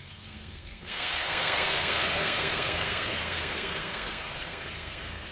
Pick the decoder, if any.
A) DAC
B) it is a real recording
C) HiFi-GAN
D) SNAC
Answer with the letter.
D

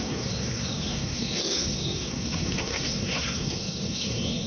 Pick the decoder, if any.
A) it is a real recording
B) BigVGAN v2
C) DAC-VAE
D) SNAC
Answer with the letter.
D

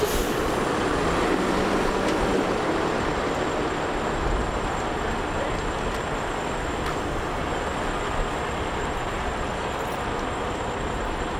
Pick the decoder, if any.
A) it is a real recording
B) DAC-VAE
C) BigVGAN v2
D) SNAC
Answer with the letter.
A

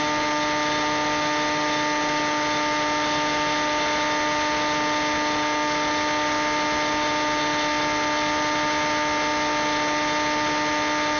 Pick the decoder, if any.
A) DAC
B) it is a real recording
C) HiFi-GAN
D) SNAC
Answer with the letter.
B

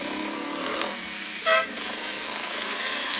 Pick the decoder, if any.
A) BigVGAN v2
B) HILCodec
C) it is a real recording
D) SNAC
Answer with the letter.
D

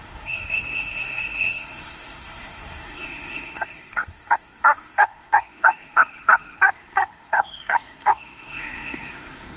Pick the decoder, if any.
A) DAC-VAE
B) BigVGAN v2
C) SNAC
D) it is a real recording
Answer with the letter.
C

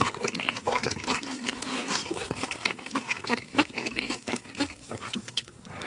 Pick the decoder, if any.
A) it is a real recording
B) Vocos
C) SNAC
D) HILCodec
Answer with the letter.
C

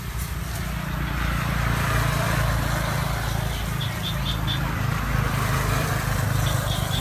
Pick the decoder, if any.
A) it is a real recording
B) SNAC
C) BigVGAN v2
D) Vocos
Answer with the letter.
A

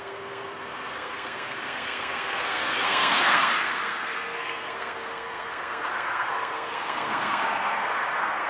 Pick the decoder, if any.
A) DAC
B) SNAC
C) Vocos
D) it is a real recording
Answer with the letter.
B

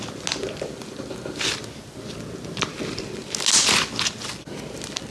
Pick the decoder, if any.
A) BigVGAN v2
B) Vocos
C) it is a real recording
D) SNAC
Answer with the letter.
C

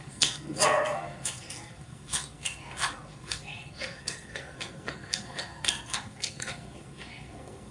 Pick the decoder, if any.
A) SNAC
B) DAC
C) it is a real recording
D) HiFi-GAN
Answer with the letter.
A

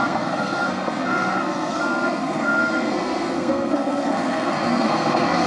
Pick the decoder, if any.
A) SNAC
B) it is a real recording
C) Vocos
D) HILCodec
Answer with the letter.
A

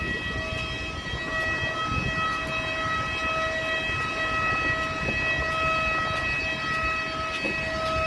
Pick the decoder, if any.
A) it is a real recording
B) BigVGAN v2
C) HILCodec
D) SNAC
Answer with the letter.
A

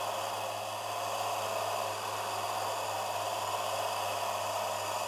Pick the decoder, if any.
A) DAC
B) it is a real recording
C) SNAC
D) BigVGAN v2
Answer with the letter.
B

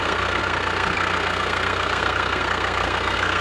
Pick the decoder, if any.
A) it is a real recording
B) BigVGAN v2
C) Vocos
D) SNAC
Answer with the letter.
D